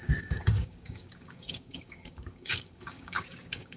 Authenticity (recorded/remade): remade